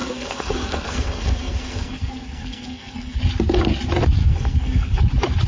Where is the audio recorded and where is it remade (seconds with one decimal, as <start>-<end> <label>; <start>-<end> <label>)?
0.0-3.2 remade; 3.2-4.2 recorded; 4.2-5.0 remade; 5.0-5.5 recorded